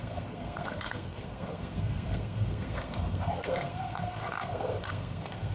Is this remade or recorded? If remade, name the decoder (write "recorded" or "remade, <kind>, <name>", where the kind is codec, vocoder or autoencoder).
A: remade, codec, SNAC